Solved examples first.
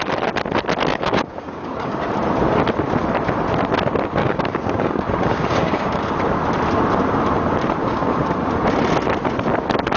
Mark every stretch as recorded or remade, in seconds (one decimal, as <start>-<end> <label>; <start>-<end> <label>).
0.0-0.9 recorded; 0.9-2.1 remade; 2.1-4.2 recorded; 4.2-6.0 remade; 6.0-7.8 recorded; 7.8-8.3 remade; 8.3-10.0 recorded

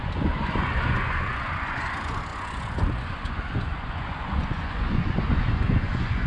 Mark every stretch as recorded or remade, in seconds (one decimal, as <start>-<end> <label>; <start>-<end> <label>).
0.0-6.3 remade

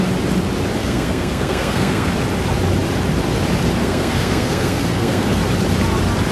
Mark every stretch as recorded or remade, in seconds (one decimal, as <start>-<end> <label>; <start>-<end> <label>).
0.0-0.8 recorded; 0.8-2.1 remade; 2.1-3.8 recorded; 3.8-5.4 remade; 5.4-6.3 recorded